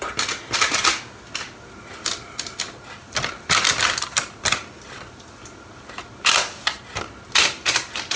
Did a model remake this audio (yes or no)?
no